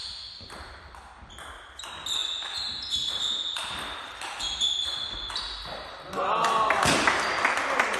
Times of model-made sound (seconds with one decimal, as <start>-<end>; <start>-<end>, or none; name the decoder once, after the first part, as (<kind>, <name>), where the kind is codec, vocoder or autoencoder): none